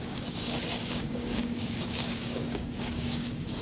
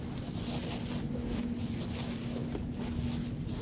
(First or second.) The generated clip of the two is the first